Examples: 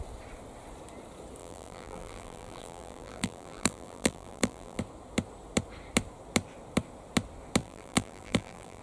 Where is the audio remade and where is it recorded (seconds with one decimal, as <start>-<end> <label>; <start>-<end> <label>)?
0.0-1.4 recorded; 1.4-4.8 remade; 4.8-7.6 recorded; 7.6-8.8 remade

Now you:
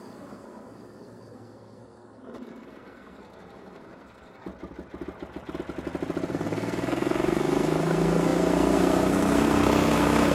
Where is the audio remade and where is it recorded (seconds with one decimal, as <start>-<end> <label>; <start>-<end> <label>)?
0.0-4.5 remade; 4.5-6.3 recorded; 6.3-10.3 remade

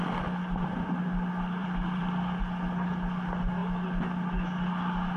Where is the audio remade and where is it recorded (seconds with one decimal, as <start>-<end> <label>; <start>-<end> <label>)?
0.0-1.6 recorded; 1.6-2.4 remade; 2.4-5.2 recorded

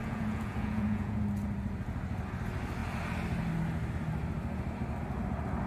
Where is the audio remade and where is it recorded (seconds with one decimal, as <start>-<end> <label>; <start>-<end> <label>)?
0.0-1.2 remade; 1.2-5.7 recorded